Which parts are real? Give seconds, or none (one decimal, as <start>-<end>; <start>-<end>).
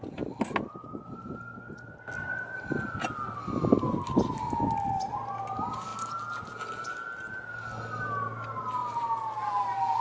0.0-10.0